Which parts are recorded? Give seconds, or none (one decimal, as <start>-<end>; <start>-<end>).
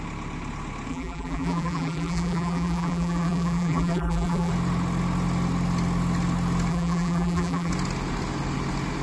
0.0-0.9; 4.5-6.7; 7.7-9.0